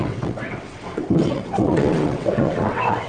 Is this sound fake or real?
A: fake